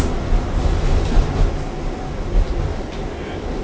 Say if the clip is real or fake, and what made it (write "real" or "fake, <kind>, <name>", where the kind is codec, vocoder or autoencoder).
real